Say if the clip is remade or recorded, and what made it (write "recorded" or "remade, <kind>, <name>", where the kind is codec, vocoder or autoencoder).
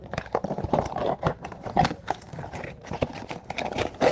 remade, vocoder, BigVGAN v2